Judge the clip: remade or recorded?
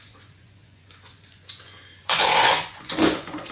remade